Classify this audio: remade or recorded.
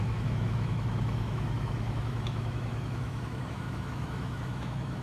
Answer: remade